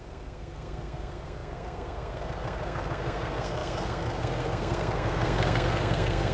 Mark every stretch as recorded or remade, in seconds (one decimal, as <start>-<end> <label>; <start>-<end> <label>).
0.0-6.3 remade